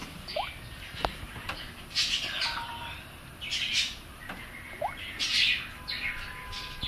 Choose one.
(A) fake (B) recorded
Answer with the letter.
B